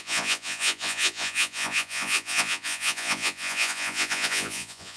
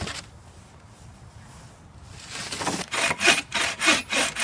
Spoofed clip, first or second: first